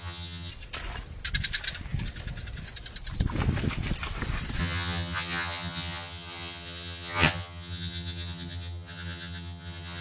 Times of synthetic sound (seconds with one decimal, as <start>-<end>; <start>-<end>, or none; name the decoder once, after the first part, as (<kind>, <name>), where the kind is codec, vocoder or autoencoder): 0.0-0.5 (vocoder, HiFi-GAN); 4.6-10.0